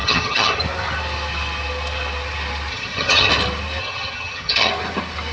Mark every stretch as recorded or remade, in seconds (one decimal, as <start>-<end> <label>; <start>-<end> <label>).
0.0-0.6 remade; 0.6-2.7 recorded; 2.7-3.3 remade; 3.3-3.8 recorded; 3.8-4.7 remade; 4.7-5.3 recorded